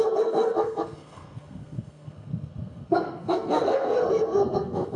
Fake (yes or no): yes